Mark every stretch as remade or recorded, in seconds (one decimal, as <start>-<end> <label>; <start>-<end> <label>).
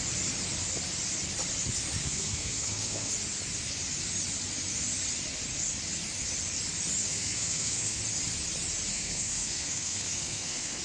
0.0-2.0 recorded; 2.0-3.1 remade; 3.1-7.1 recorded; 7.1-8.0 remade; 8.0-8.9 recorded; 8.9-10.8 remade